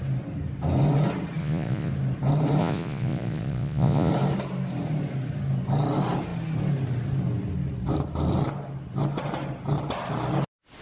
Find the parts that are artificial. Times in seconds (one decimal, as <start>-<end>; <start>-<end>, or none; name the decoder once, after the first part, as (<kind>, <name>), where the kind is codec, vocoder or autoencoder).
1.4-1.9 (vocoder, Vocos); 2.6-4.1